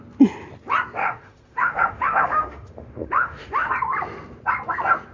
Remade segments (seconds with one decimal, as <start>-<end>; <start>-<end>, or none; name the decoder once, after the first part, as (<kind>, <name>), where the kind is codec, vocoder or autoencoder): 1.0-3.7 (autoencoder, DAC-VAE)